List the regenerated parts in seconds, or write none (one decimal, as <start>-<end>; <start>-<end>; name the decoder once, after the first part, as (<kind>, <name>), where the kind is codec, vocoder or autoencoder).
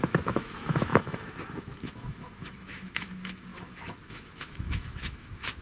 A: 0.0-5.6 (autoencoder, DAC-VAE)